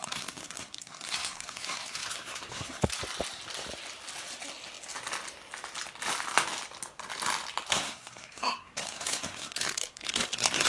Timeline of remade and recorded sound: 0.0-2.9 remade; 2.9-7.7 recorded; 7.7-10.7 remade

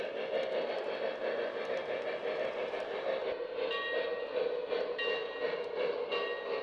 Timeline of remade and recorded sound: 0.0-6.6 recorded

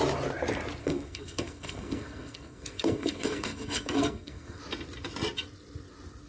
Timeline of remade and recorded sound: 0.0-0.8 recorded; 0.8-4.6 remade; 4.6-6.3 recorded

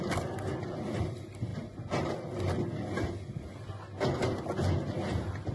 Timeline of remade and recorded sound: 0.0-5.5 recorded

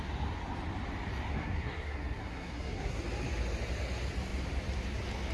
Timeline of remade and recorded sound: 0.0-1.3 recorded; 1.3-3.0 remade; 3.0-5.3 recorded

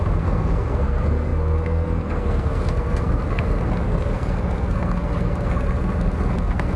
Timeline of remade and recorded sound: 0.0-6.8 remade

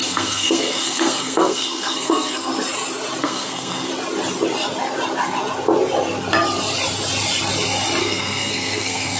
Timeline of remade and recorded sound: 0.0-2.5 remade; 2.5-3.2 recorded; 3.2-3.9 remade; 3.9-8.0 recorded; 8.0-9.2 remade